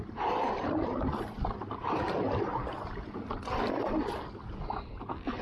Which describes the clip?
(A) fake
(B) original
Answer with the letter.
B